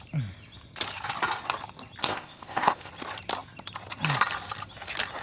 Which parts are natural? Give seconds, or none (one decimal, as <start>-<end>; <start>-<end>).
0.0-2.0; 2.9-5.2